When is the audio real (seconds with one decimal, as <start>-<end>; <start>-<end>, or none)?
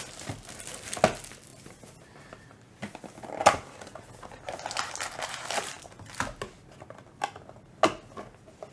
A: 0.0-1.5; 4.0-8.7